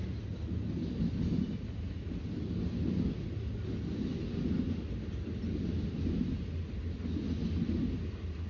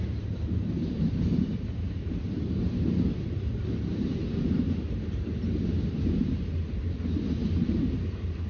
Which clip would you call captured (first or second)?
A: first